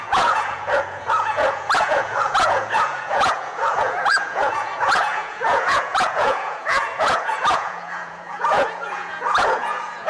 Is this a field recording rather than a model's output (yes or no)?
no